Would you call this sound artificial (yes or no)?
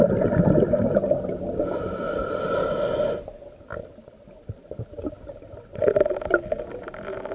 no